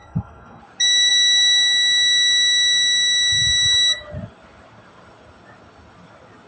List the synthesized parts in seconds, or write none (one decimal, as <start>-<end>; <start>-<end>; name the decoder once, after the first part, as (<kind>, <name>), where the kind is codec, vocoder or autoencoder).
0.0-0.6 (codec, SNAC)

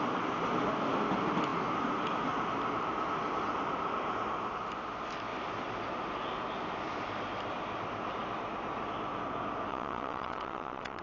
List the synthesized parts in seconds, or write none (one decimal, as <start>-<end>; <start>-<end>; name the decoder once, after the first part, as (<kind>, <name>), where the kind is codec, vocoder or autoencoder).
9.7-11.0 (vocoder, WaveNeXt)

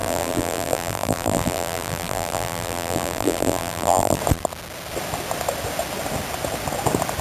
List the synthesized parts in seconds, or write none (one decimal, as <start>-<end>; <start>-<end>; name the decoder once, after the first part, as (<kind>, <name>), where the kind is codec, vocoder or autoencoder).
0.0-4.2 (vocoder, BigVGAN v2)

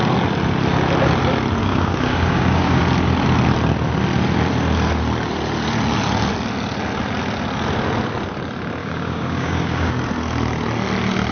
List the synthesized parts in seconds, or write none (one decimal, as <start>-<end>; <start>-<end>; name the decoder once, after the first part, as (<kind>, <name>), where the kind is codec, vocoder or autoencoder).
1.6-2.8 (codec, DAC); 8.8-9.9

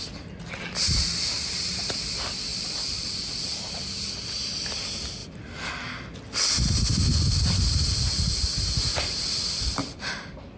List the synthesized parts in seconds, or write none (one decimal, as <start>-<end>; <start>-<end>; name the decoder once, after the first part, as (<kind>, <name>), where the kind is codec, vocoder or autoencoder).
2.5-3.8 (vocoder, BigVGAN v2); 5.2-5.7; 9.8-10.6

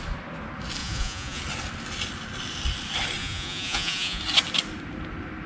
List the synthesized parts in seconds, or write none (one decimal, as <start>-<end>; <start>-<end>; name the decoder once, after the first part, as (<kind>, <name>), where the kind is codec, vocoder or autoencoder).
0.8-1.4 (vocoder, Vocos); 3.2-4.2